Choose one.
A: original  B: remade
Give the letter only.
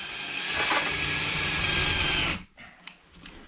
A